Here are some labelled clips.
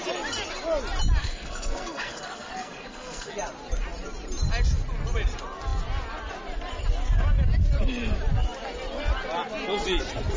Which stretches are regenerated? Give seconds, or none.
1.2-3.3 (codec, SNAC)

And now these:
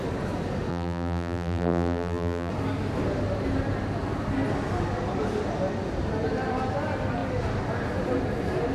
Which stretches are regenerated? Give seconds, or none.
0.7-2.5 (vocoder, BigVGAN v2)

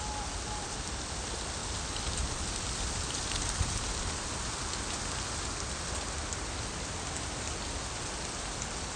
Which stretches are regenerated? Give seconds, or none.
none

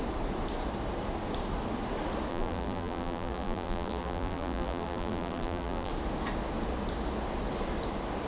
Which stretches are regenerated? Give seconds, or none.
2.3-5.9 (vocoder, BigVGAN v2)

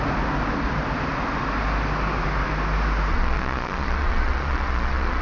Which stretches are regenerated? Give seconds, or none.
3.1-5.2 (vocoder, Vocos)

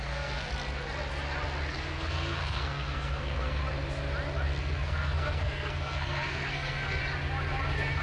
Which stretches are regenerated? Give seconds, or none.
0.0-0.5 (codec, SNAC); 1.7-3.6; 4.6-7.0

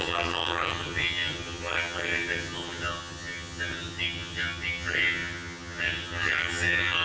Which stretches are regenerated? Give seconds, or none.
0.0-7.0 (vocoder, HiFi-GAN)

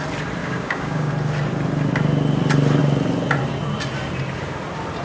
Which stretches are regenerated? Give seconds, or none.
0.4-1.1 (codec, DAC)